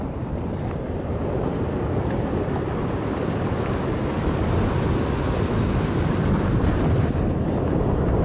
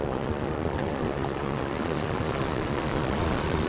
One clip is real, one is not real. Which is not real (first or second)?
second